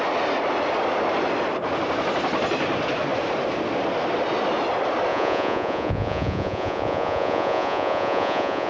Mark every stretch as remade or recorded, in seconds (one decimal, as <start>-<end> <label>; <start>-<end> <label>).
0.0-5.1 recorded; 5.1-8.7 remade